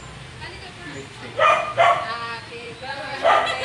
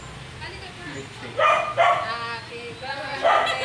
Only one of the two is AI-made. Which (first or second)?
first